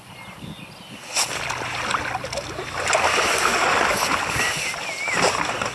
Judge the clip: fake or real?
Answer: real